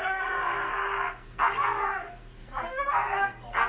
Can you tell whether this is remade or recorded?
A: remade